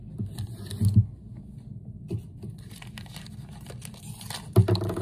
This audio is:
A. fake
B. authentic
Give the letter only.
B